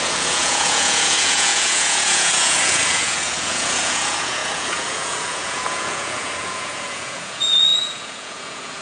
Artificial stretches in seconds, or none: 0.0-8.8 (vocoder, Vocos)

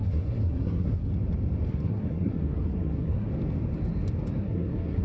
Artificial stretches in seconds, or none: 0.0-1.1 (codec, SNAC); 1.7-3.3; 4.4-5.0

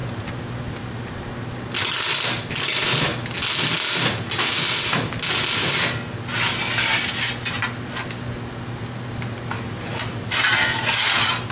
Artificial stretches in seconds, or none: none

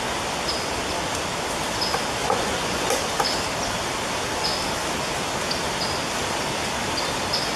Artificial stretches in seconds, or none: 2.2-2.9 (vocoder, Vocos)